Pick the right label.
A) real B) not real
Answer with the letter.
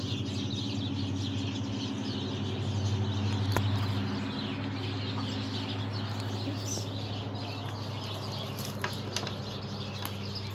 A